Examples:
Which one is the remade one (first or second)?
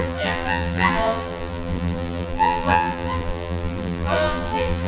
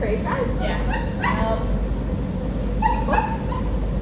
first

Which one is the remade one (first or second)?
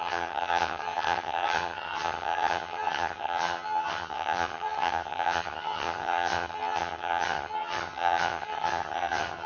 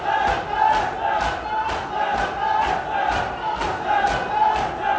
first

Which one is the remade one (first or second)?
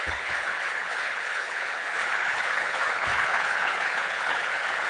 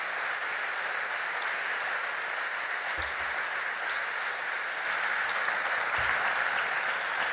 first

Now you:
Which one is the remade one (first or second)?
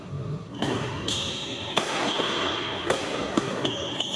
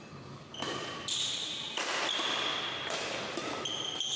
first